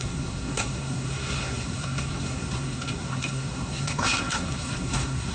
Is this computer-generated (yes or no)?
yes